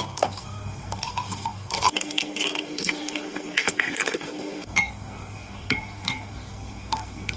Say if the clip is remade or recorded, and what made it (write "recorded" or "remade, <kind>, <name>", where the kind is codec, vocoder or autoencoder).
remade, codec, SNAC